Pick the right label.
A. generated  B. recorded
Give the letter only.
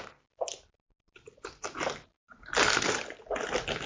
B